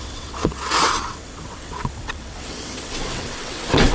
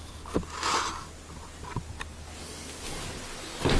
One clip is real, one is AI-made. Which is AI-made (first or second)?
first